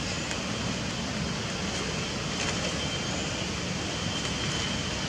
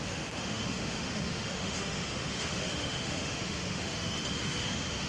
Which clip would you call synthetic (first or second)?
second